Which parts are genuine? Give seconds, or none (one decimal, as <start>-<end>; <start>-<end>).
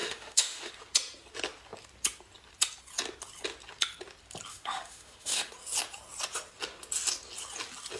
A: 0.7-4.5; 5.5-8.0